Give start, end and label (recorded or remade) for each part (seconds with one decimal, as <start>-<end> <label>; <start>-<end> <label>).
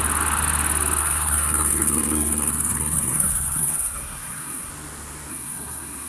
0.0-1.0 recorded; 1.0-4.7 remade; 4.7-5.3 recorded; 5.3-6.1 remade